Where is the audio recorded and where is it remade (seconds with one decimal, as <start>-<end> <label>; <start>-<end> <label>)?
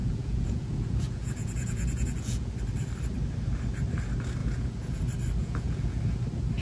0.0-2.5 remade; 2.5-4.4 recorded; 4.4-5.0 remade; 5.0-5.4 recorded; 5.4-6.0 remade; 6.0-6.6 recorded